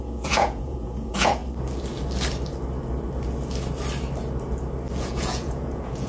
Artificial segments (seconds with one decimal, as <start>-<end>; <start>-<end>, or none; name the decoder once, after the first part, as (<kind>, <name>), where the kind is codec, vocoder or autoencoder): 0.0-1.4 (vocoder, Vocos); 5.0-6.1